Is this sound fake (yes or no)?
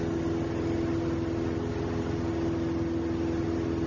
no